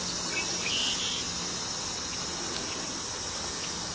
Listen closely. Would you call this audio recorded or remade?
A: recorded